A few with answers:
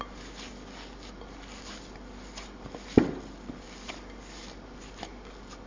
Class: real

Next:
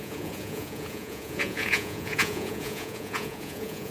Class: fake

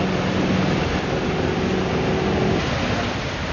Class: real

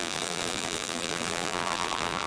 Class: fake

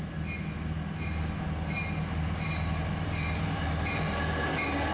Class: real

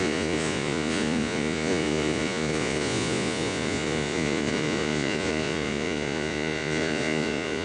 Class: fake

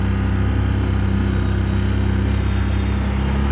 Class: real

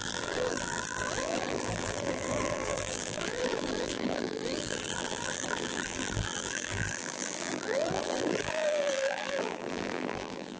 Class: fake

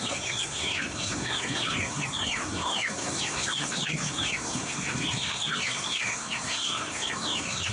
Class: fake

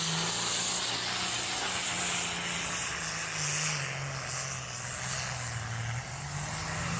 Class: real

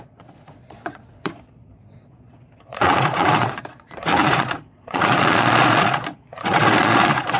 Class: fake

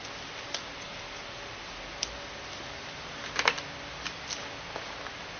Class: real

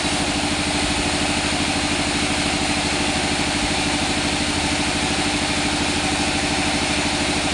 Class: real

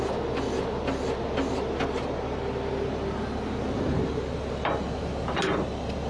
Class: real